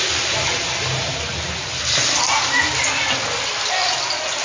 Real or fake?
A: real